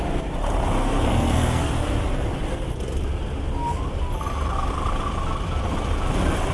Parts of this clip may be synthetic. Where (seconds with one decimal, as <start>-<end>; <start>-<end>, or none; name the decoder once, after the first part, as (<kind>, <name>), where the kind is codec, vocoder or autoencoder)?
0.8-1.7 (codec, SNAC)